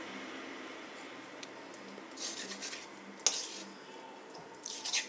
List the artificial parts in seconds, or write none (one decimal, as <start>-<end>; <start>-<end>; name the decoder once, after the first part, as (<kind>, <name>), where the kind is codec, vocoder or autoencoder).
none